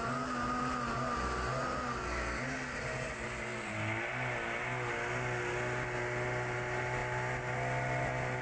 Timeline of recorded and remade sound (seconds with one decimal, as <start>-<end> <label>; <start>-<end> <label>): 0.0-8.4 recorded